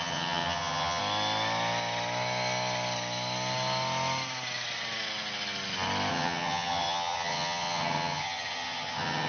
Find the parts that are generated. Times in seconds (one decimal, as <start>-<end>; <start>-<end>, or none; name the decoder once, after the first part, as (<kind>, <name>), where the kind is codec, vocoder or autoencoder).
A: 0.0-1.0 (vocoder, HiFi-GAN); 6.1-9.3